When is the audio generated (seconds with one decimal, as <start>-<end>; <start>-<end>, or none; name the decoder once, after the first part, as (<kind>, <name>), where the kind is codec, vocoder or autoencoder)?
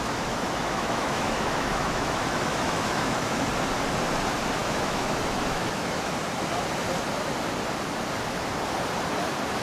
0.0-3.5 (autoencoder, DAC-VAE); 4.6-6.1